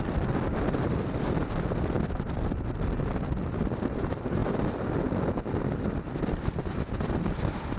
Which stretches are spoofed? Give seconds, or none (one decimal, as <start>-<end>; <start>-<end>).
none